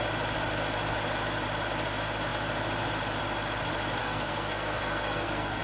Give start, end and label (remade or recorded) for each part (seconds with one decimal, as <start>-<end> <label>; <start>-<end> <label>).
0.0-4.0 recorded; 4.0-5.6 remade